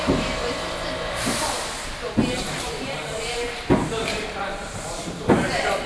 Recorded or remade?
remade